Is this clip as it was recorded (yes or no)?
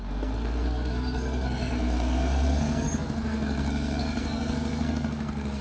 no